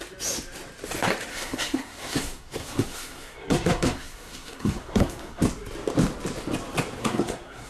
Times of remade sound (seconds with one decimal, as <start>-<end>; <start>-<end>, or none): 1.3-5.4; 7.0-7.7